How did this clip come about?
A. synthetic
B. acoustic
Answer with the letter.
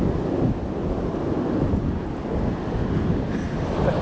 B